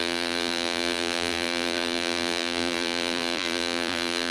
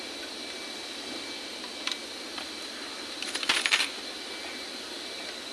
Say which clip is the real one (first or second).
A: second